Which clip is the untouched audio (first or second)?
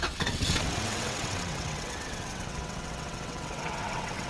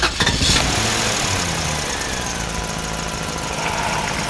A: second